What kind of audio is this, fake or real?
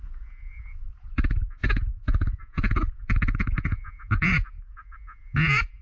fake